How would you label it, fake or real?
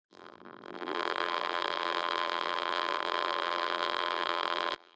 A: fake